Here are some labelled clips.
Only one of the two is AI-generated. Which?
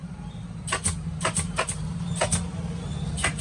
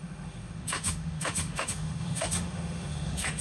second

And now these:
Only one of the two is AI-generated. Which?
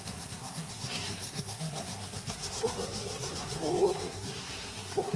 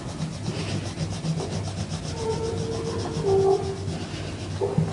first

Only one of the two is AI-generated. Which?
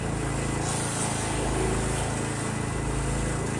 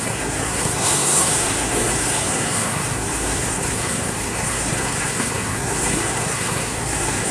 second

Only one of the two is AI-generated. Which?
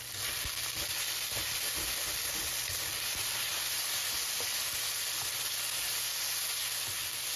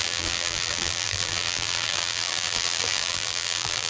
second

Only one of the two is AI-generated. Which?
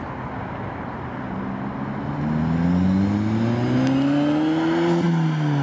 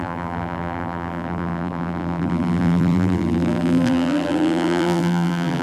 second